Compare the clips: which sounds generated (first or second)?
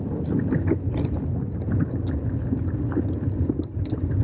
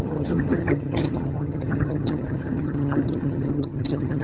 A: second